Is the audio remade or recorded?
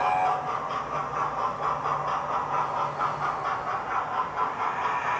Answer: recorded